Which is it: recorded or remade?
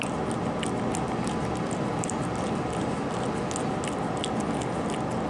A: recorded